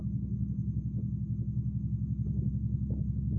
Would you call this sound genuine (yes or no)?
yes